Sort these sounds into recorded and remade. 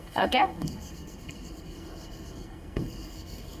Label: remade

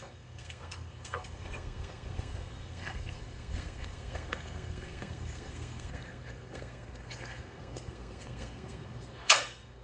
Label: remade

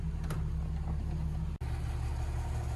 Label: recorded